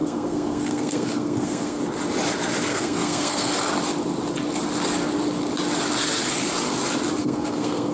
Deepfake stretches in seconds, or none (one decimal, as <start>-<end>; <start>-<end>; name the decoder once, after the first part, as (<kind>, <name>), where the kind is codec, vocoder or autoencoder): 0.0-1.8 (codec, SNAC); 2.7-3.5; 7.2-7.9